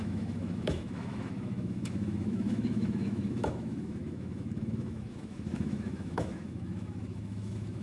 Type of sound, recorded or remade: remade